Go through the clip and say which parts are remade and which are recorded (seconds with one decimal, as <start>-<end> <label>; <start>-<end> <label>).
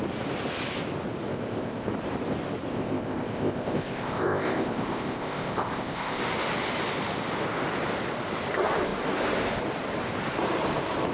0.0-1.3 recorded; 1.3-1.9 remade; 1.9-2.7 recorded; 2.7-6.2 remade; 6.2-11.1 recorded